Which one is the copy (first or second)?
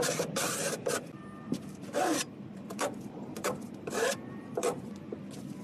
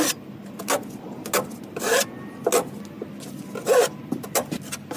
first